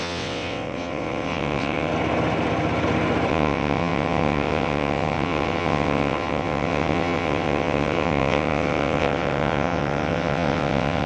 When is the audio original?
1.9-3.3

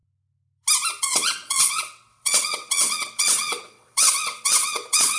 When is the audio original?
0.0-1.0

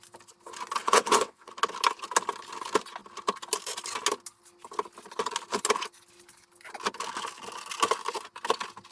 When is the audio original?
0.0-0.8; 1.5-8.9

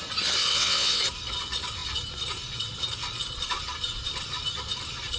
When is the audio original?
0.0-0.4; 1.0-5.2

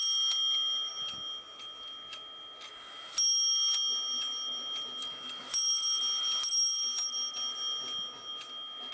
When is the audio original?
0.0-8.9

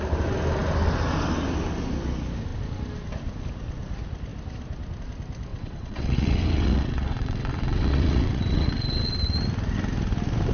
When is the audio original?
0.0-5.5; 9.1-10.5

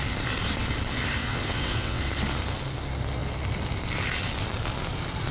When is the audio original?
0.0-1.2; 2.0-5.3

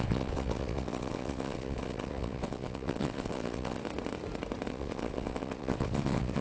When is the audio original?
3.8-4.7